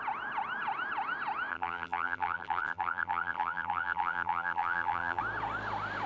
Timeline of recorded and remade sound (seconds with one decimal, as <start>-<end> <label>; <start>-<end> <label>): 0.0-1.5 recorded; 1.5-5.2 remade; 5.2-6.1 recorded